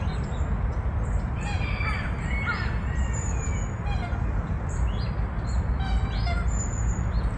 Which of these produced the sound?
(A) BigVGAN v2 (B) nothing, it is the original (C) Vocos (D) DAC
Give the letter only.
B